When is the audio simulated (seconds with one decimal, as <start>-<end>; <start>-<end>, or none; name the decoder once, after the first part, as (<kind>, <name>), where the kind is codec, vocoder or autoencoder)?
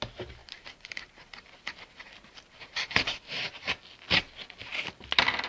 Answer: 0.4-3.7 (vocoder, BigVGAN v2)